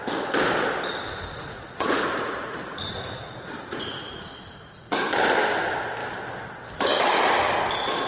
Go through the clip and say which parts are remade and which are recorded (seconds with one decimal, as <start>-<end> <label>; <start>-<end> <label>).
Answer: 0.0-1.3 recorded; 1.3-4.9 remade; 4.9-8.1 recorded

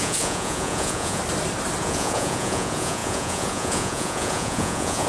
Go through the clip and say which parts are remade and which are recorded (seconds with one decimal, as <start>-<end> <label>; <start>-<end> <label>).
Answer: 0.0-1.2 remade; 1.2-1.8 recorded; 1.8-5.1 remade

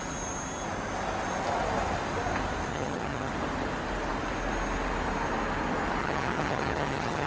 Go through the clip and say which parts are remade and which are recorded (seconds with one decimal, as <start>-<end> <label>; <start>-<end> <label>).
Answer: 0.0-2.7 recorded; 2.7-3.3 remade; 3.3-6.0 recorded; 6.0-7.3 remade

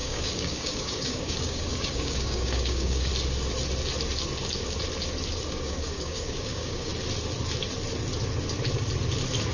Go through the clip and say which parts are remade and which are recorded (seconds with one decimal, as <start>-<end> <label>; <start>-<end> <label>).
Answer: 0.0-3.1 remade; 3.1-5.5 recorded; 5.5-6.9 remade; 6.9-9.5 recorded

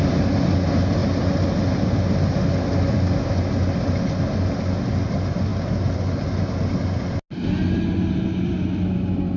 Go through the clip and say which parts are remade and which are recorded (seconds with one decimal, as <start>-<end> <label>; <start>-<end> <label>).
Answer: 0.0-9.4 recorded

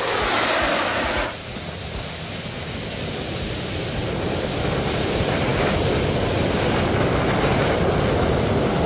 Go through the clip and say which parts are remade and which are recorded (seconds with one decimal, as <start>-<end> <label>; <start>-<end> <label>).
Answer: 0.0-0.9 recorded; 0.9-1.9 remade; 1.9-8.9 recorded

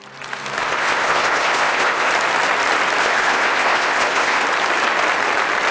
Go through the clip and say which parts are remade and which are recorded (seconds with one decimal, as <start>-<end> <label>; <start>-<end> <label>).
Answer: 0.0-0.6 recorded; 0.6-2.1 remade; 2.1-3.0 recorded; 3.0-4.4 remade; 4.4-5.7 recorded